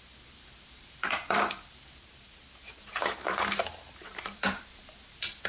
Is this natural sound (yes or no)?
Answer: no